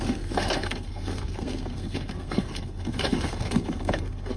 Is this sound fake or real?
fake